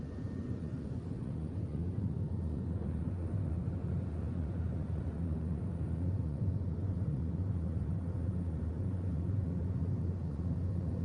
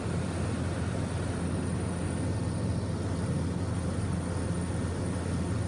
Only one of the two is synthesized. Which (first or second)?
first